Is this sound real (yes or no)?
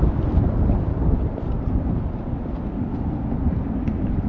yes